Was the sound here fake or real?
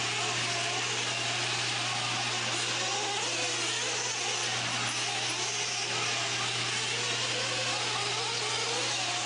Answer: real